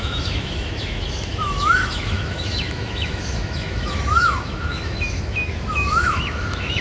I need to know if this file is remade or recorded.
remade